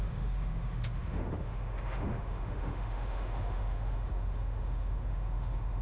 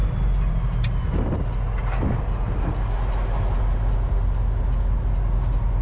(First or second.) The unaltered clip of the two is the second